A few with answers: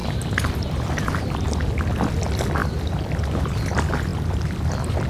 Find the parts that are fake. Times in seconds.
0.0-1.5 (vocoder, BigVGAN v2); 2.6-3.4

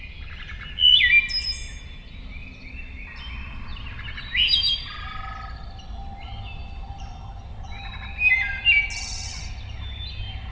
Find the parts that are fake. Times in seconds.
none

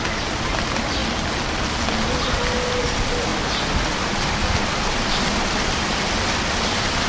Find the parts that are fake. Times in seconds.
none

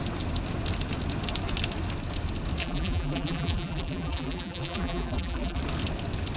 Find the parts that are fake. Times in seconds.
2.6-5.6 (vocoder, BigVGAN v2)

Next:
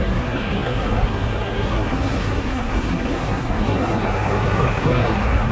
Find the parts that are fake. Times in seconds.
0.0-5.5 (codec, SNAC)